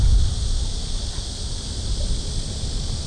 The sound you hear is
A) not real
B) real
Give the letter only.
B